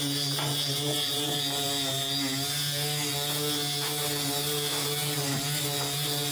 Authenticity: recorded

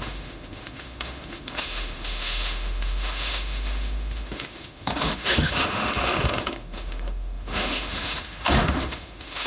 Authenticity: remade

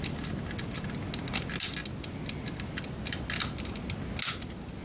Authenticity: recorded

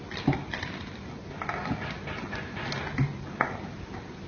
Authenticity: recorded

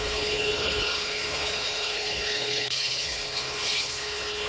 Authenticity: remade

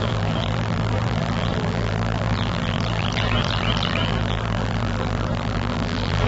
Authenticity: remade